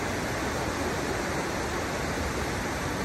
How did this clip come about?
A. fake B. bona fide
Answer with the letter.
B